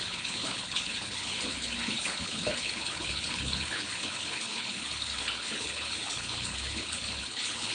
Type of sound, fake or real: fake